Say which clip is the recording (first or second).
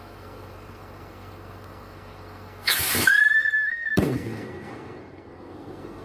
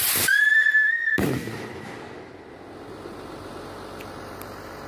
second